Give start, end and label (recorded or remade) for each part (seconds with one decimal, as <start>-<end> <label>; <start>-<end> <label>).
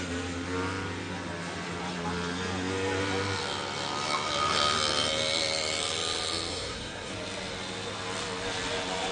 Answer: 0.0-6.5 recorded; 6.5-7.1 remade; 7.1-9.1 recorded